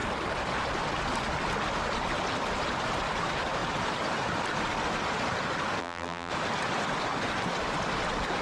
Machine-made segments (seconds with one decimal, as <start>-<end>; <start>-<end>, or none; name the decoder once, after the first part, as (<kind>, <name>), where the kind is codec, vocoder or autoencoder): 5.8-6.3 (vocoder, BigVGAN v2)